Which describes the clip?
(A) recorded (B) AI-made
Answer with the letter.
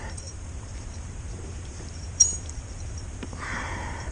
B